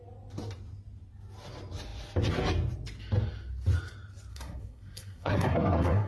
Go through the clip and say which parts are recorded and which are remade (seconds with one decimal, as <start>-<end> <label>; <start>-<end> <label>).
0.0-4.3 recorded; 4.3-6.1 remade